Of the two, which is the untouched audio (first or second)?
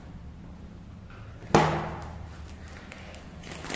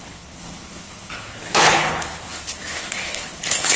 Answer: first